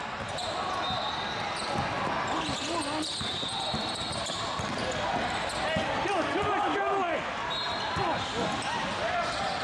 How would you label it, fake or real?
real